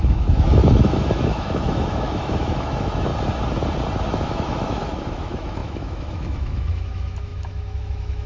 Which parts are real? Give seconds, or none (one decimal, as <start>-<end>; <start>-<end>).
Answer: 3.1-4.1